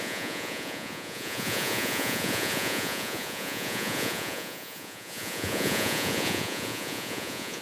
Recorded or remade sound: remade